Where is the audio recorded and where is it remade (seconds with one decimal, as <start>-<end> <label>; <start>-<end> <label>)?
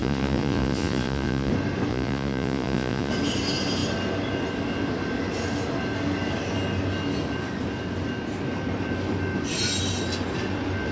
0.0-1.5 remade; 1.5-1.9 recorded; 1.9-3.1 remade; 3.1-10.9 recorded